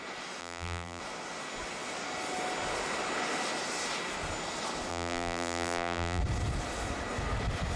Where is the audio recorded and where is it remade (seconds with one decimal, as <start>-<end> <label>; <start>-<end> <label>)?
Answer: 0.0-0.4 recorded; 0.4-1.0 remade; 1.0-4.9 recorded; 4.9-6.2 remade; 6.2-7.8 recorded